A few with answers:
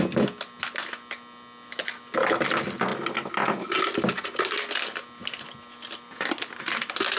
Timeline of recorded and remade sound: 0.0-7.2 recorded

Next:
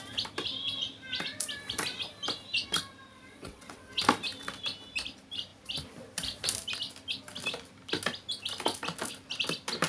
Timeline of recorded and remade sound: 0.0-3.1 recorded; 3.1-3.9 remade; 3.9-9.9 recorded

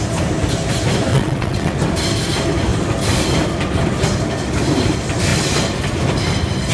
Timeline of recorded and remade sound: 0.0-1.1 recorded; 1.1-1.7 remade; 1.7-6.7 recorded

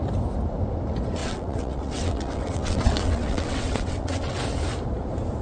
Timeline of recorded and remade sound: 0.0-1.2 recorded; 1.2-4.4 remade; 4.4-5.4 recorded

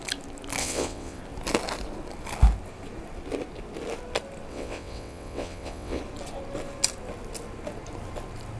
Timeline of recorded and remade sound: 0.0-0.6 recorded; 0.6-1.2 remade; 1.2-4.5 recorded; 4.5-6.0 remade; 6.0-8.6 recorded

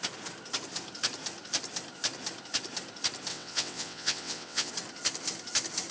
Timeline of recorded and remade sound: 0.0-3.3 recorded; 3.3-4.7 remade; 4.7-5.9 recorded

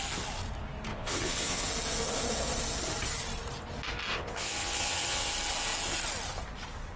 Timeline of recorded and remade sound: 0.0-0.9 recorded; 0.9-1.7 remade; 1.7-4.1 recorded; 4.1-5.3 remade; 5.3-7.0 recorded